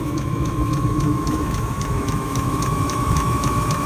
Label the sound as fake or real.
fake